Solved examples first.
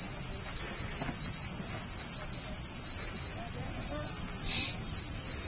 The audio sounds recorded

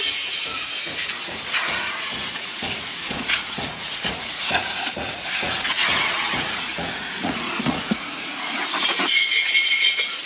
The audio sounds remade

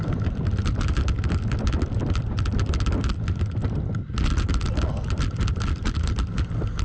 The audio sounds recorded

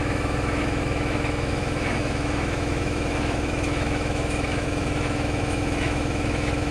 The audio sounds remade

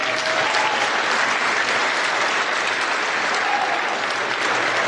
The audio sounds recorded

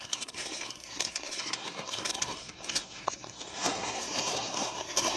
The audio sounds remade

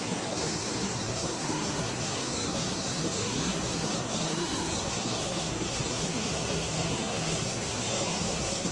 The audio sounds remade